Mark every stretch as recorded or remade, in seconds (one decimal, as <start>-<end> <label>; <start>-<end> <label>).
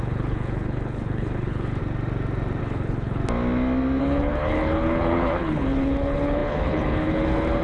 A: 0.0-1.8 remade; 1.8-2.6 recorded; 2.6-3.2 remade; 3.2-4.0 recorded; 4.0-7.6 remade